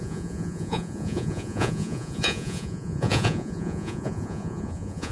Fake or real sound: fake